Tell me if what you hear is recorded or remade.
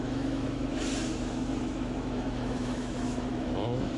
remade